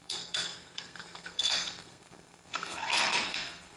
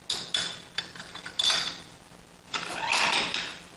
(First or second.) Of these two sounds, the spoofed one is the first